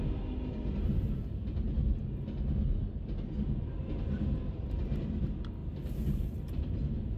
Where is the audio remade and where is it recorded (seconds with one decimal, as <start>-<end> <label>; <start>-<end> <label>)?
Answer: 0.0-7.2 recorded